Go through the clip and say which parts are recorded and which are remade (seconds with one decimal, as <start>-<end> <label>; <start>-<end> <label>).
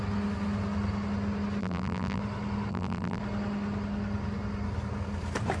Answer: 0.0-1.6 recorded; 1.6-2.2 remade; 2.2-2.7 recorded; 2.7-3.2 remade; 3.2-5.6 recorded